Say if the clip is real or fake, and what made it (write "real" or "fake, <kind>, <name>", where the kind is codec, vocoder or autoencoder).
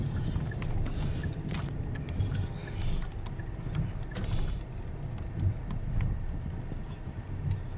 real